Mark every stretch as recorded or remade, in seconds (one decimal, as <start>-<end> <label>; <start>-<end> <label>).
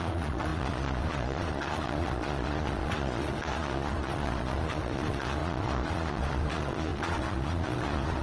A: 0.0-8.2 remade